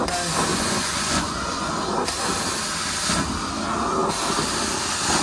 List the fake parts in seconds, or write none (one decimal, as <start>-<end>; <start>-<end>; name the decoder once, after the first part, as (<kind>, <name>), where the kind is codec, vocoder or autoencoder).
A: 0.5-1.7 (vocoder, Vocos)